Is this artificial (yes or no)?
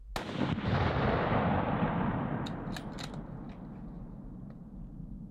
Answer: no